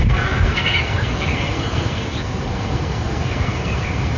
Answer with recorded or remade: remade